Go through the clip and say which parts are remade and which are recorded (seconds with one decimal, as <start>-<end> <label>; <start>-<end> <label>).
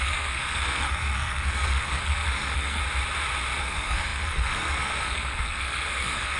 0.0-2.8 remade; 2.8-3.6 recorded; 3.6-6.4 remade